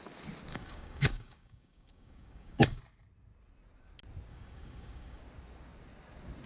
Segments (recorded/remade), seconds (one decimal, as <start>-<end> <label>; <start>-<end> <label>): 0.0-0.5 recorded; 0.5-2.8 remade; 2.8-4.3 recorded; 4.3-5.2 remade; 5.2-6.5 recorded

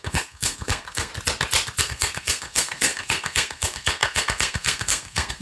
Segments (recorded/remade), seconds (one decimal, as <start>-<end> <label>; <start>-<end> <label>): 0.0-1.1 remade; 1.1-1.8 recorded; 1.8-5.4 remade

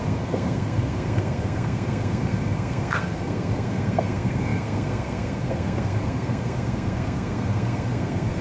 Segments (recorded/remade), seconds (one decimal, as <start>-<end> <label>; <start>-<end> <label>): 0.0-8.4 remade

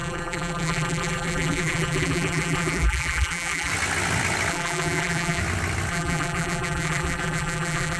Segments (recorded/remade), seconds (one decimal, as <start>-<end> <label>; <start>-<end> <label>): 0.0-3.7 remade; 3.7-4.5 recorded; 4.5-5.4 remade; 5.4-5.9 recorded; 5.9-8.0 remade

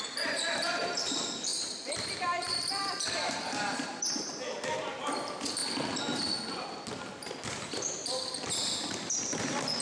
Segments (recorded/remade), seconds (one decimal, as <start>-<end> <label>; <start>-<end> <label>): 0.0-5.6 remade; 5.6-7.5 recorded; 7.5-8.0 remade; 8.0-8.9 recorded; 8.9-9.8 remade

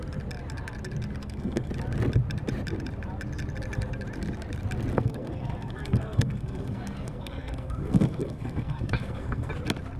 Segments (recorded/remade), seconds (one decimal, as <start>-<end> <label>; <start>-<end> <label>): 0.0-1.2 recorded; 1.2-1.7 remade; 1.7-4.9 recorded; 4.9-9.5 remade; 9.5-10.0 recorded